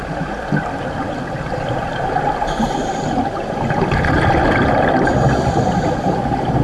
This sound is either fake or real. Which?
real